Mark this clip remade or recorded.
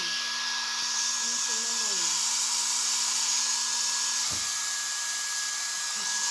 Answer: recorded